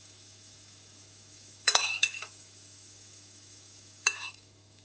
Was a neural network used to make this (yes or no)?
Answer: yes